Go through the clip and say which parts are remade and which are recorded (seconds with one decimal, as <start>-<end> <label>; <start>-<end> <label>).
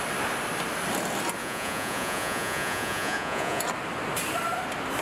0.0-1.4 recorded; 1.4-3.6 remade; 3.6-5.0 recorded